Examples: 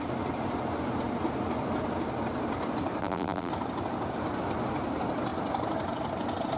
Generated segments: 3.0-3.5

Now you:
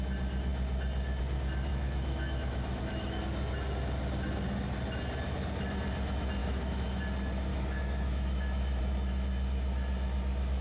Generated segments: 1.7-3.2; 6.4-7.0; 7.5-8.8

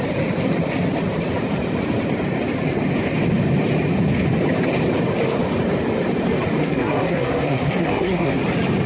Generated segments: 6.6-8.4

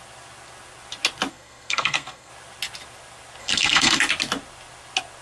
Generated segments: 1.3-2.3; 3.4-4.0